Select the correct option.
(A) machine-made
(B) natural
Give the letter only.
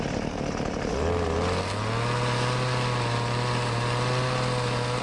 B